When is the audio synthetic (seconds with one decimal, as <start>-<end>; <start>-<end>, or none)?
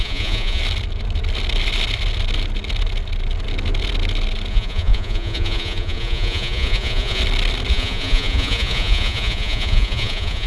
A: 0.0-0.6; 4.5-7.2; 7.7-10.5